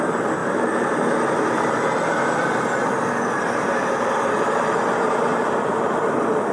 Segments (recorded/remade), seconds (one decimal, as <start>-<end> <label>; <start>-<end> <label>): 0.0-5.3 recorded; 5.3-6.1 remade; 6.1-6.5 recorded